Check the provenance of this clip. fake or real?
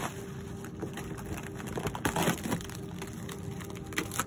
real